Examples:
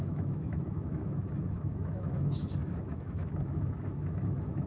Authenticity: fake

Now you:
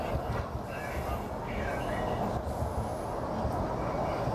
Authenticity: real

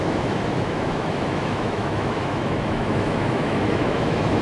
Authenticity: fake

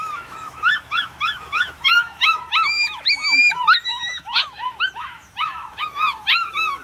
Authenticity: fake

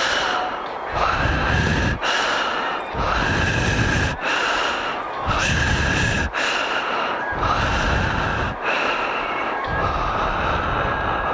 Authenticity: real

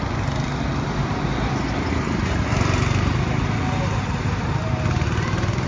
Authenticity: real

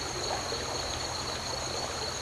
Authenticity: real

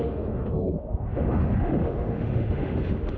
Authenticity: fake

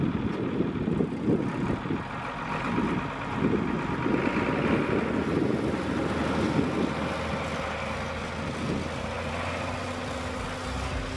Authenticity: real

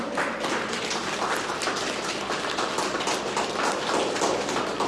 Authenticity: real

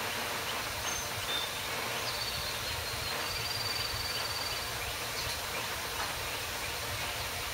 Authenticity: real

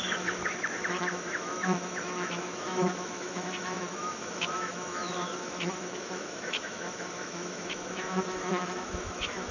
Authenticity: fake